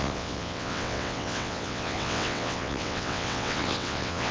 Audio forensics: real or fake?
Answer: fake